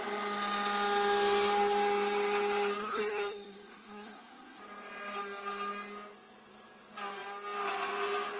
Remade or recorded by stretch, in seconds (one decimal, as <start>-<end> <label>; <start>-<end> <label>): 0.0-2.8 recorded; 2.8-4.6 remade; 4.6-8.4 recorded